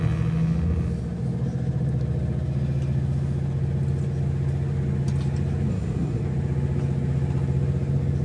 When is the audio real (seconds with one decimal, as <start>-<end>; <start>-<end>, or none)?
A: 0.0-5.7; 6.2-8.2